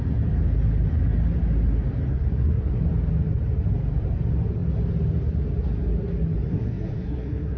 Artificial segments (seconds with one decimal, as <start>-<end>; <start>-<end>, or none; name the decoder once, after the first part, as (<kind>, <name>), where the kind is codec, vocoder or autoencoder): 2.1-2.8 (codec, SNAC); 6.5-7.6